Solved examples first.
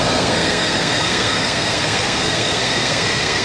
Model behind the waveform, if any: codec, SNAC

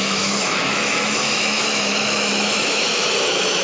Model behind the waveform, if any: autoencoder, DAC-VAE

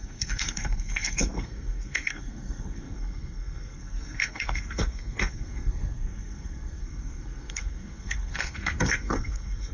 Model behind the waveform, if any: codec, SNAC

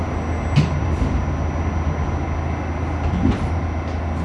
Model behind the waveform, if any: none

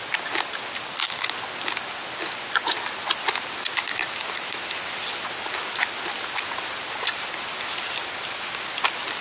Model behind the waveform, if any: none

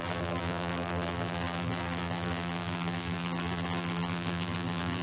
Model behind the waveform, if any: vocoder, BigVGAN v2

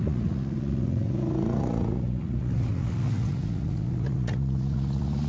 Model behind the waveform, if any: vocoder, Vocos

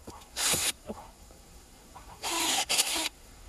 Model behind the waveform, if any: codec, SNAC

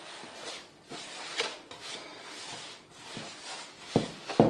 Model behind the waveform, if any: none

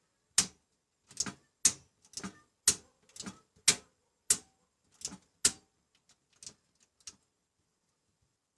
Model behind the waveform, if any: none